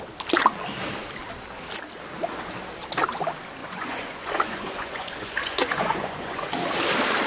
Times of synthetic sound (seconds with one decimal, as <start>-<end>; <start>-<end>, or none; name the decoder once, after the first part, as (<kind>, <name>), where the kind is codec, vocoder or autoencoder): 3.6-6.5 (vocoder, Vocos)